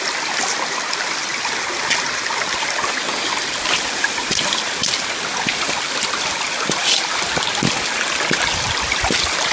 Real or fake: real